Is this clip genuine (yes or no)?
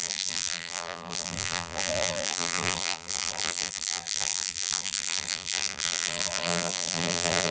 no